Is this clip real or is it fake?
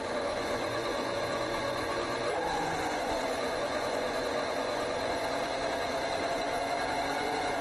fake